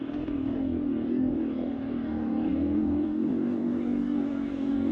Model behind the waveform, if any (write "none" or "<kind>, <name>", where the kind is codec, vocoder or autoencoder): codec, DAC